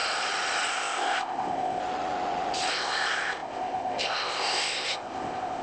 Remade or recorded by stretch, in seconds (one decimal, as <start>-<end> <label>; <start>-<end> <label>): 0.0-0.7 recorded; 0.7-1.8 remade; 1.8-2.7 recorded; 2.7-5.6 remade